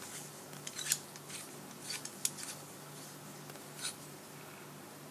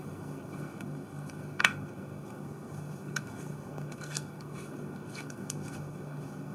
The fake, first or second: second